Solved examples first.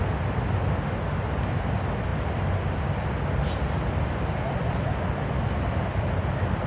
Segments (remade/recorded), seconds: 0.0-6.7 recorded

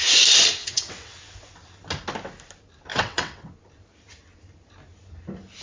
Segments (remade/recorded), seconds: 0.0-0.6 recorded; 0.6-1.2 remade; 1.2-2.9 recorded; 2.9-3.5 remade; 3.5-5.6 recorded

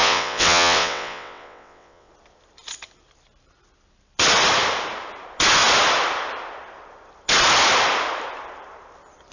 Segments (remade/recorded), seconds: 0.0-2.1 remade; 2.1-9.3 recorded

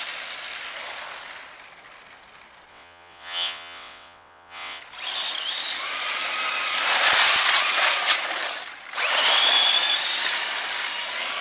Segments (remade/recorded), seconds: 0.0-2.7 recorded; 2.7-4.8 remade; 4.8-11.4 recorded

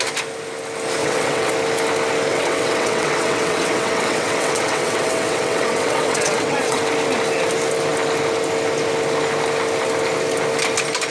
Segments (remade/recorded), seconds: 0.0-1.0 recorded; 1.0-1.5 remade; 1.5-2.3 recorded; 2.3-6.8 remade; 6.8-11.1 recorded

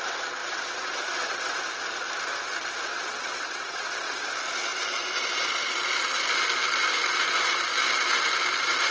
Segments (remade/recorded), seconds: 0.0-0.4 recorded; 0.4-1.6 remade; 1.6-2.9 recorded; 2.9-4.3 remade; 4.3-8.9 recorded

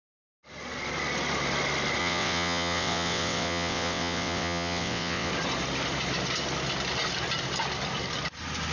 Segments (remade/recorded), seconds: 0.0-2.0 recorded; 2.0-5.3 remade; 5.3-8.7 recorded